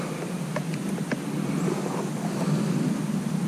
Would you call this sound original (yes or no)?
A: yes